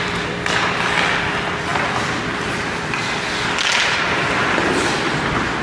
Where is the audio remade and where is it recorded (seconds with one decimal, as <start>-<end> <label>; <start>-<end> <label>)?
0.0-5.6 recorded